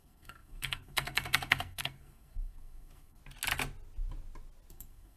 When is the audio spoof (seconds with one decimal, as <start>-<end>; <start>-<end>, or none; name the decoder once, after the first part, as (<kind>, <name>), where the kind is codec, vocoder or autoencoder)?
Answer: 0.0-3.2 (codec, SNAC); 4.7-5.2